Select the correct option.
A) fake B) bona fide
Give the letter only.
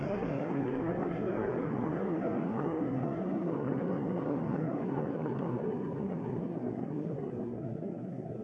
A